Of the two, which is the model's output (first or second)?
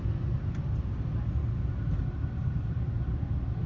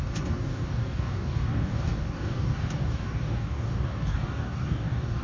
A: second